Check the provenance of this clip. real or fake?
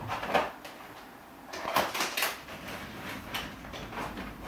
fake